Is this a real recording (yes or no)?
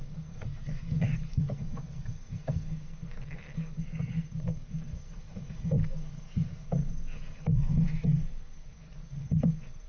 no